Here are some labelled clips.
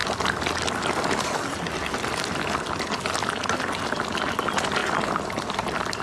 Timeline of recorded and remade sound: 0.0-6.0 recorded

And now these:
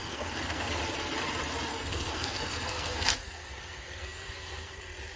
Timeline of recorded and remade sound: 0.0-0.8 remade; 0.8-1.7 recorded; 1.7-4.8 remade; 4.8-5.2 recorded

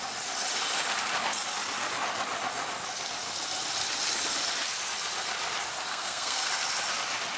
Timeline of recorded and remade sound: 0.0-5.9 recorded; 5.9-6.5 remade; 6.5-7.4 recorded

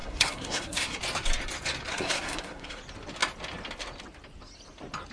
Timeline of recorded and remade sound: 0.0-1.0 remade; 1.0-1.9 recorded; 1.9-2.8 remade; 2.8-5.1 recorded